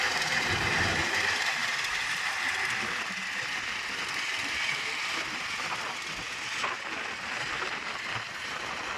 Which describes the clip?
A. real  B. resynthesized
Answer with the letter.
A